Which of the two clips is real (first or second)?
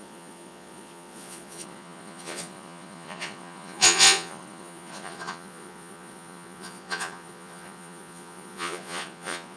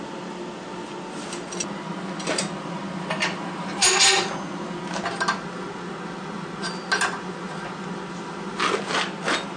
second